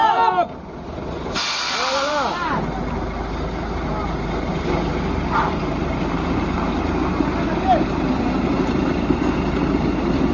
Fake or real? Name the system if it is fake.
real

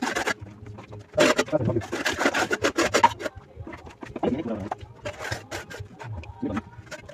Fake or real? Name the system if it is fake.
real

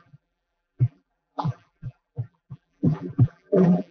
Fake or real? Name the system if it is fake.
fake, vocoder, BigVGAN v2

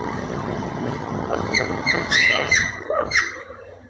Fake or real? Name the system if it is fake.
fake, vocoder, HiFi-GAN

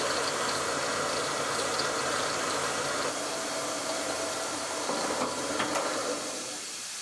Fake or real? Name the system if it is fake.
fake, vocoder, BigVGAN v2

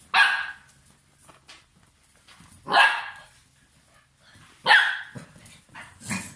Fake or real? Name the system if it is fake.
real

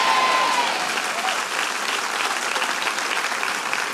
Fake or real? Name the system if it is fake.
real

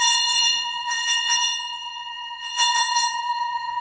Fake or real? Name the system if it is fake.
fake, vocoder, Vocos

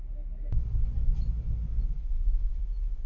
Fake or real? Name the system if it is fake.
real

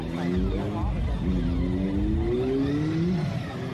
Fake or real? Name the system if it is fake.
real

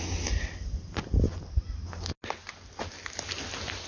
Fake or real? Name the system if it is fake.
real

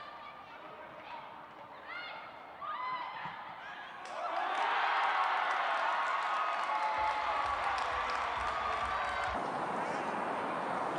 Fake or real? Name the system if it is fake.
real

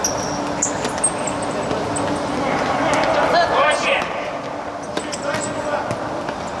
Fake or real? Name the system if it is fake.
real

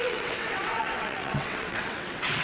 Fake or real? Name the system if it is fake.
fake, vocoder, WaveNeXt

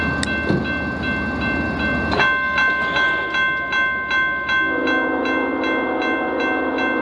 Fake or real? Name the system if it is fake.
real